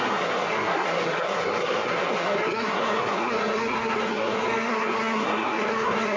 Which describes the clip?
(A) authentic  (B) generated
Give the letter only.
B